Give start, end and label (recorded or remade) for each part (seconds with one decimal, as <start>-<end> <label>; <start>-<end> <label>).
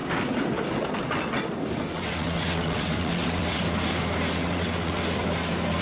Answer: 0.0-1.9 recorded; 1.9-3.6 remade; 3.6-4.4 recorded; 4.4-5.0 remade; 5.0-5.8 recorded